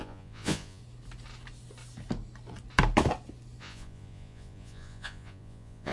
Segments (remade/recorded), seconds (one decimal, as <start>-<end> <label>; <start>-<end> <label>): 0.0-0.8 remade; 0.8-3.6 recorded; 3.6-5.9 remade